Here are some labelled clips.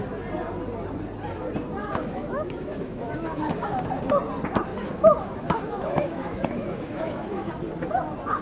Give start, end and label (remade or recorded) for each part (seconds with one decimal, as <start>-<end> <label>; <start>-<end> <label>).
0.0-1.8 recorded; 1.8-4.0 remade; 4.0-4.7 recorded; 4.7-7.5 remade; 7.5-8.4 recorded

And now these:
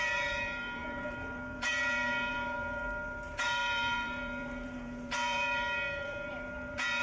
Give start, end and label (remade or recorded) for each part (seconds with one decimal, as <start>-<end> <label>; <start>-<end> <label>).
0.0-7.0 remade

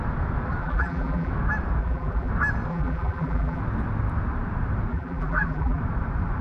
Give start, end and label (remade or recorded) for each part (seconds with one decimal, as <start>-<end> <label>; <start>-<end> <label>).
0.0-0.6 recorded; 0.6-1.3 remade; 1.3-1.8 recorded; 1.8-2.3 remade; 2.3-2.7 recorded; 2.7-3.6 remade; 3.6-4.9 recorded; 4.9-5.8 remade; 5.8-6.4 recorded

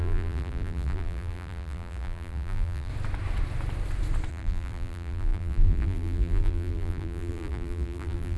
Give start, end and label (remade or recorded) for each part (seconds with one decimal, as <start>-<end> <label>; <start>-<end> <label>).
0.0-2.9 remade; 2.9-4.3 recorded; 4.3-8.4 remade

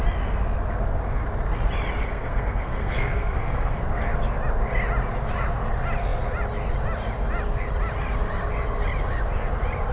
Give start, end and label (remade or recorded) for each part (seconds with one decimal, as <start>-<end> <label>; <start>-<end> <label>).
0.0-2.0 recorded; 2.0-3.8 remade; 3.8-9.9 recorded

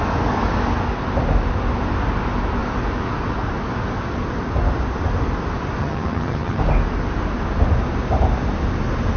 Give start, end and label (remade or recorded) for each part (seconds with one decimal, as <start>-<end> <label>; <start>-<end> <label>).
0.0-5.8 recorded; 5.8-6.6 remade; 6.6-9.2 recorded

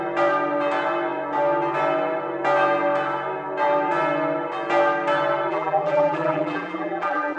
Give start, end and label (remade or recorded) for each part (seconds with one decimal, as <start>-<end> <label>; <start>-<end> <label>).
0.0-5.5 recorded; 5.5-7.4 remade